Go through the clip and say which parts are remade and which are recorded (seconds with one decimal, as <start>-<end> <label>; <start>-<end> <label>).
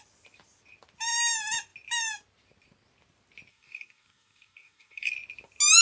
0.0-3.5 recorded; 3.5-5.1 remade; 5.1-5.8 recorded